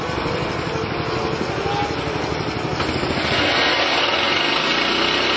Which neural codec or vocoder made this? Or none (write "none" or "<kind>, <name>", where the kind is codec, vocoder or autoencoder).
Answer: none